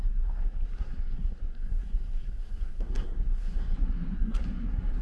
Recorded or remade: remade